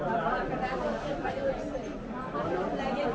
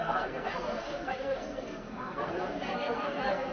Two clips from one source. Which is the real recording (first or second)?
first